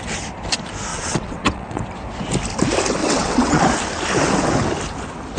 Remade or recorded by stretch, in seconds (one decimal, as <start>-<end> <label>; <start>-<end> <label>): 0.0-0.9 recorded; 0.9-1.8 remade; 1.8-3.0 recorded; 3.0-3.6 remade; 3.6-5.4 recorded